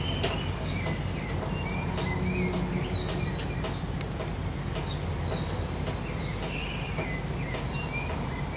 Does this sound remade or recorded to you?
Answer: recorded